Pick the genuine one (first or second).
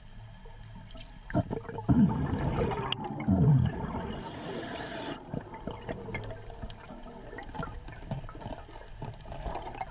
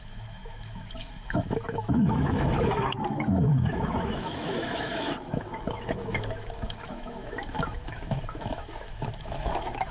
first